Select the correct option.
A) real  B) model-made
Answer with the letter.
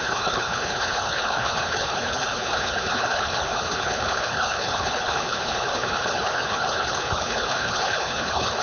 B